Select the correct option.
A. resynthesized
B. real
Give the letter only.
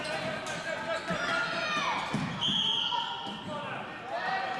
B